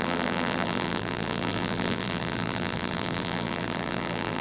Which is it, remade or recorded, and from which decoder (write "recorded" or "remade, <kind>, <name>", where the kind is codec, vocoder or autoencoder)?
remade, vocoder, BigVGAN v2